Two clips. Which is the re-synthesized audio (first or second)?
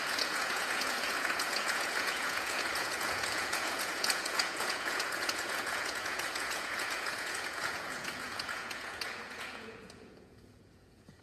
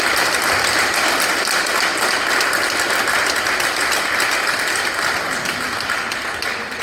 first